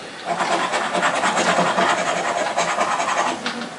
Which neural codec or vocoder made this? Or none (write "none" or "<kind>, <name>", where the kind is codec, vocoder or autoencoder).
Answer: none